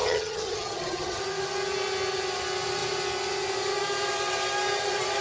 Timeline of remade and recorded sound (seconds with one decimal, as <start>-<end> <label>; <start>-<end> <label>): 0.0-1.2 remade; 1.2-5.2 recorded